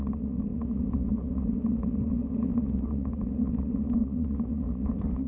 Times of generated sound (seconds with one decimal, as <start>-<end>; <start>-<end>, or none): 0.0-5.3